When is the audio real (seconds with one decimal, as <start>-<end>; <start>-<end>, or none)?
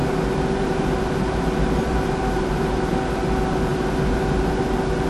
3.1-3.7; 4.6-5.1